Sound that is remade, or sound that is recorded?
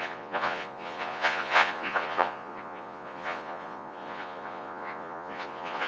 remade